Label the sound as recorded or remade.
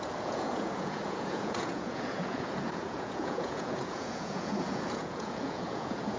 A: remade